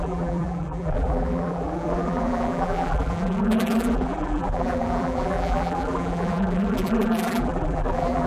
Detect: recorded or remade remade